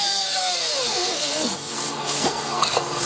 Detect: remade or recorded remade